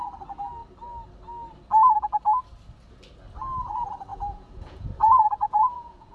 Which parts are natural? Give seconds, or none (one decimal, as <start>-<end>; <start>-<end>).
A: 0.0-4.1